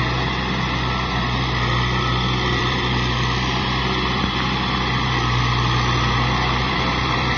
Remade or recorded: remade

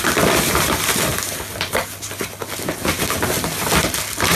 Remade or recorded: recorded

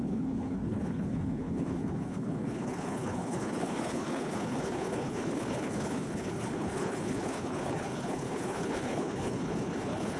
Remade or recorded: remade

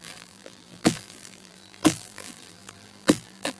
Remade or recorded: remade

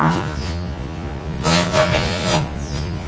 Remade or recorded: remade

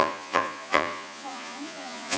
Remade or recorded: remade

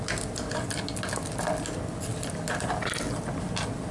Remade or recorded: recorded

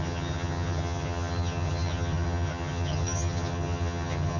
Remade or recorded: remade